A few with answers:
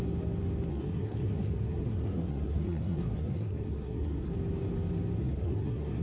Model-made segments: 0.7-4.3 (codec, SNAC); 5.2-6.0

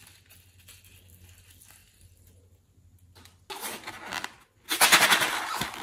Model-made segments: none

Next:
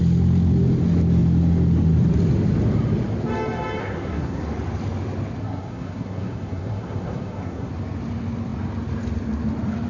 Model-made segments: 3.8-4.4 (codec, SNAC); 5.4-7.7